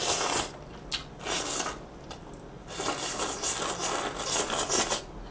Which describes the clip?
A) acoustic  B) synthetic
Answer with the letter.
A